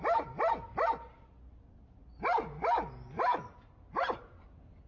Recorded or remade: recorded